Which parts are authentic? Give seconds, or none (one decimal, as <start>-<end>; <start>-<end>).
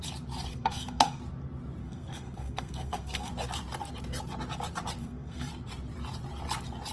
0.0-0.5; 1.2-1.8; 3.3-5.0; 5.5-6.9